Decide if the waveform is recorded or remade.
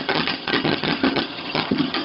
remade